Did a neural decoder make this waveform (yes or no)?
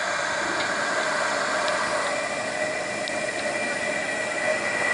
no